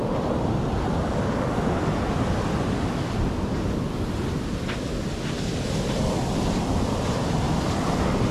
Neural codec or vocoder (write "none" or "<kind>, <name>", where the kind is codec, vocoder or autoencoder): none